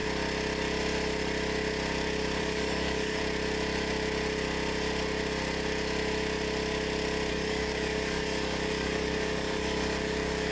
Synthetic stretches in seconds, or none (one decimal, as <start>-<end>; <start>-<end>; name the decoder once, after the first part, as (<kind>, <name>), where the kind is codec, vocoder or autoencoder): 2.4-3.2 (codec, DAC); 7.3-10.5